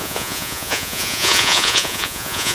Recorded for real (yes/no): no